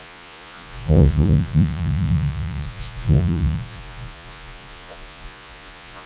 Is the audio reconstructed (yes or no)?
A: yes